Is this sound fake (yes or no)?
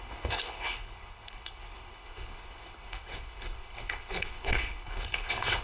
yes